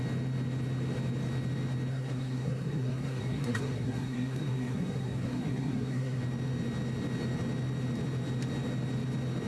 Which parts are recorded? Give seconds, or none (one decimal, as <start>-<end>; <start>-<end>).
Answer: 0.0-1.9; 6.2-9.5